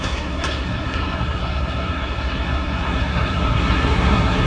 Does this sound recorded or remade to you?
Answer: remade